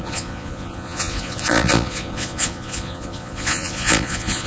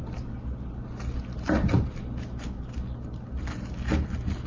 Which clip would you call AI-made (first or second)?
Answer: first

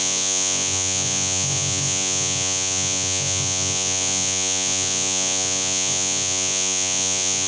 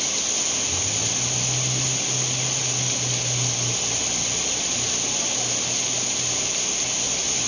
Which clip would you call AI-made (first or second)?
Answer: first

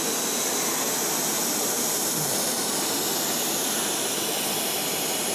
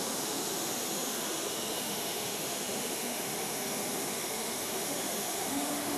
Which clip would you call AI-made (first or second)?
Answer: second